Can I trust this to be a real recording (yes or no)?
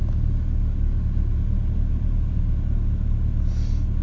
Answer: yes